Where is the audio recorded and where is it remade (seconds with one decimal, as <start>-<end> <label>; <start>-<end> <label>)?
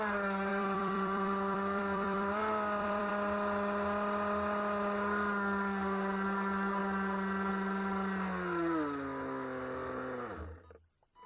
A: 0.0-0.5 recorded; 0.5-3.1 remade; 3.1-11.3 recorded